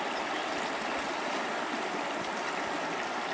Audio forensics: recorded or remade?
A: recorded